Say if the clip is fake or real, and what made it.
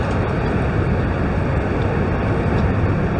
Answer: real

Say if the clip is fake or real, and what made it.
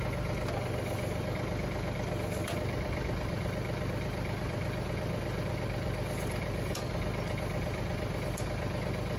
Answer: real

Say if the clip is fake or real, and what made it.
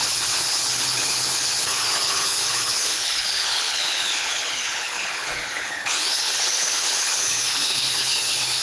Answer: fake, codec, HILCodec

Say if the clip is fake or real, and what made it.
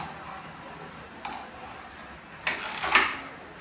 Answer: real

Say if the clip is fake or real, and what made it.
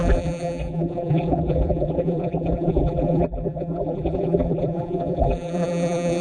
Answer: fake, vocoder, BigVGAN v2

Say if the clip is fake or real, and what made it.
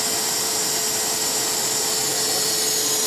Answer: fake, vocoder, BigVGAN v2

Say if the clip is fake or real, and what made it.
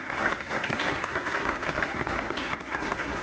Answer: fake, codec, SNAC